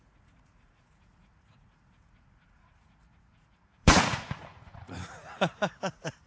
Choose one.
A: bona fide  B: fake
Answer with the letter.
B